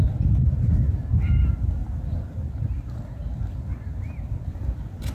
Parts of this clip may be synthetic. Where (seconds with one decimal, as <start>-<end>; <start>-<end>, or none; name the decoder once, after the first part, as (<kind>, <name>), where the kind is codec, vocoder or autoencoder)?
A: none